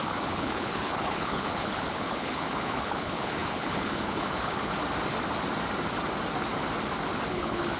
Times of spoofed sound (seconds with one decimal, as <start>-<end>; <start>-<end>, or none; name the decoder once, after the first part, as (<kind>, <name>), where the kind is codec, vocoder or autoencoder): 0.0-4.7 (codec, HILCodec); 7.3-7.8